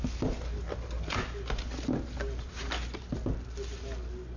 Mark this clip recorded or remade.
recorded